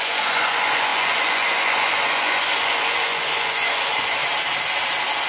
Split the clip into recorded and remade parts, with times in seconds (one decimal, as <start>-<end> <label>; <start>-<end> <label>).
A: 0.0-4.2 remade; 4.2-5.3 recorded